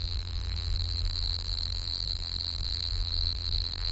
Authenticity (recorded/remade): remade